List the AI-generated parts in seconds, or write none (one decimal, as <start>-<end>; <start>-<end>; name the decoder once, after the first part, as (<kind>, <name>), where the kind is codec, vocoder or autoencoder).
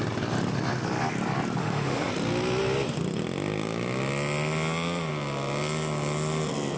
1.6-2.1 (autoencoder, DAC-VAE)